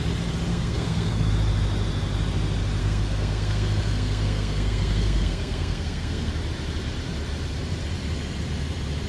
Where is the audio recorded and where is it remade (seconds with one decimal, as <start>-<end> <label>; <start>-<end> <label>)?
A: 0.0-0.5 recorded; 0.5-1.3 remade; 1.3-2.8 recorded; 2.8-6.3 remade; 6.3-9.1 recorded